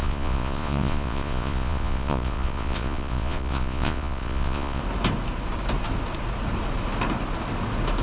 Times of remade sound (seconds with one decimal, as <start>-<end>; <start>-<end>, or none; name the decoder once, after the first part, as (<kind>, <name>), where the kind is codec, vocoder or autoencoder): 0.0-4.8 (vocoder, Vocos)